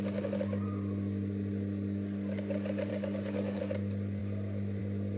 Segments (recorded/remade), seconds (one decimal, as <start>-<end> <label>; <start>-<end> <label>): 0.0-2.9 recorded; 2.9-3.6 remade; 3.6-5.2 recorded